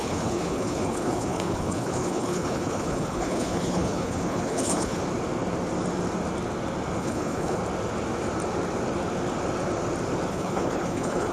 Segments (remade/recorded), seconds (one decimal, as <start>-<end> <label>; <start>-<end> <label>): 0.0-5.0 remade; 5.0-7.0 recorded; 7.0-7.6 remade; 7.6-10.3 recorded; 10.3-11.3 remade